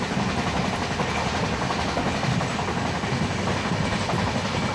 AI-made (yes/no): no